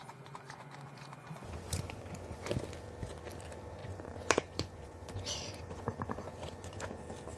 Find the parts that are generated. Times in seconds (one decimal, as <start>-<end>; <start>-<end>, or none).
0.0-2.6; 3.8-7.0